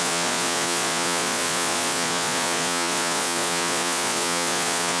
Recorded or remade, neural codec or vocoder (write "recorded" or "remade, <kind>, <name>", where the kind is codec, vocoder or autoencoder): remade, vocoder, Vocos